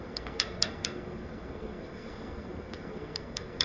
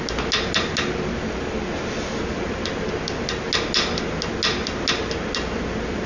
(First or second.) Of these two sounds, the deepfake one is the first